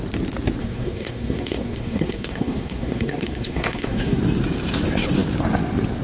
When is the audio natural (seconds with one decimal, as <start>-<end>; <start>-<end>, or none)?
0.0-0.6; 4.2-6.0